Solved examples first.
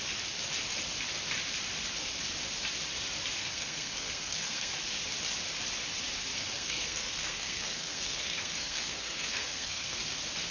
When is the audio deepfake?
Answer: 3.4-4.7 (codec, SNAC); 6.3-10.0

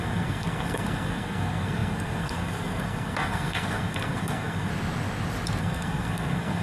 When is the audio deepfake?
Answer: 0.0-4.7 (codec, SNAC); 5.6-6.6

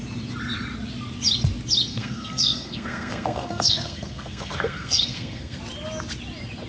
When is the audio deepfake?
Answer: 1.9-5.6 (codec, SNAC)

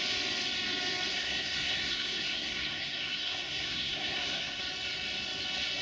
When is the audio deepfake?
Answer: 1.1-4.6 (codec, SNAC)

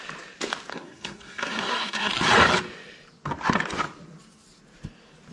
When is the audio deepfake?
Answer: 0.7-2.1 (codec, SNAC)